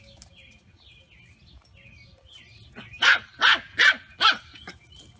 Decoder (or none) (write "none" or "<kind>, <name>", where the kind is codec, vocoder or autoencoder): none